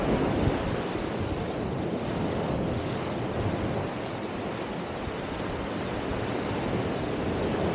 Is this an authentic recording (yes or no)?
yes